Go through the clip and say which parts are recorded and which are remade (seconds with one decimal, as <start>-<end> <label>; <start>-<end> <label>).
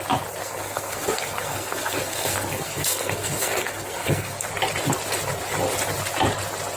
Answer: 0.0-0.4 recorded; 0.4-4.5 remade; 4.5-6.8 recorded